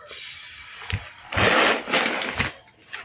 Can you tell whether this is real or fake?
real